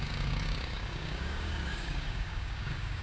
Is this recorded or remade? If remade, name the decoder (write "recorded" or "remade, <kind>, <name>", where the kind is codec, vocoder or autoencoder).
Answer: remade, codec, DAC